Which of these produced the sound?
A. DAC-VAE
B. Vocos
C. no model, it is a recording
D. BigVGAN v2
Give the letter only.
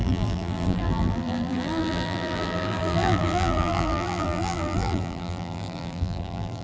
D